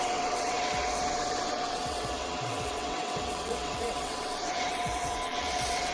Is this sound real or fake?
fake